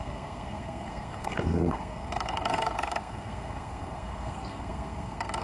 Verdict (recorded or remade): remade